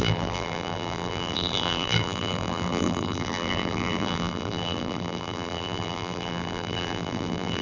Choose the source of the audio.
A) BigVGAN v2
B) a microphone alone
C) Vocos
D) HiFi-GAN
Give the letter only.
A